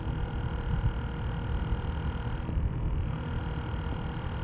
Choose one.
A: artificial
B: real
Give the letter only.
B